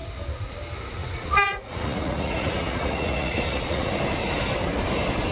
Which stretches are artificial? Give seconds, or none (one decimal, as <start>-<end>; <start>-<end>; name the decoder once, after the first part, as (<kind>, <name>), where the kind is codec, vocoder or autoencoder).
0.0-0.6 (vocoder, Vocos); 1.0-3.9